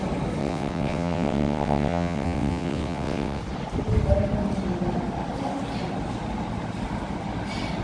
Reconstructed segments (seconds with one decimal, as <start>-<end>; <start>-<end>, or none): 0.4-3.4